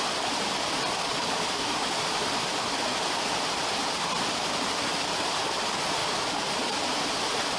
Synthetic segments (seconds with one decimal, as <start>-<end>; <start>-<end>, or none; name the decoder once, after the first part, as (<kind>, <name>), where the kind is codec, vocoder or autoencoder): none